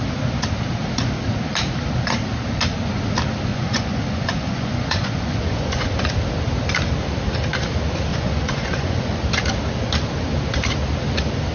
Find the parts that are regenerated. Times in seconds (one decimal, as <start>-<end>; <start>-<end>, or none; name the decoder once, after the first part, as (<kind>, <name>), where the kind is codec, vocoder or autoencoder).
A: 3.5-5.9 (vocoder, Vocos); 8.1-9.2